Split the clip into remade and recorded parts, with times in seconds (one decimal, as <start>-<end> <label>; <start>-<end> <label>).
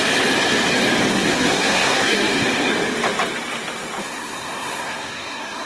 0.0-1.1 recorded; 1.1-2.7 remade; 2.7-4.0 recorded; 4.0-5.7 remade